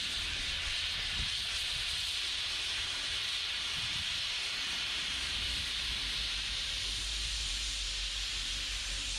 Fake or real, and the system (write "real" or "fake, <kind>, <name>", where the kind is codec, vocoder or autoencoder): fake, vocoder, BigVGAN v2